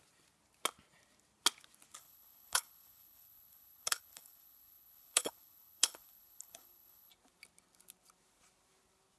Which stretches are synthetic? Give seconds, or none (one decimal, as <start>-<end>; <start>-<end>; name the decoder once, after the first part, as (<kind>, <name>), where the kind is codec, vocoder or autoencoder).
2.0-7.1 (codec, HILCodec)